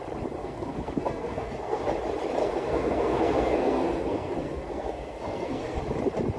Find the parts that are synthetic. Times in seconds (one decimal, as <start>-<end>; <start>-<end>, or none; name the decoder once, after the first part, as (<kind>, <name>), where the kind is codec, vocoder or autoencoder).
0.4-1.8 (codec, SNAC); 2.4-5.8